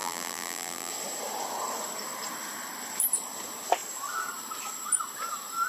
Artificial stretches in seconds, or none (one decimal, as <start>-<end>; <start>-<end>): 0.0-0.9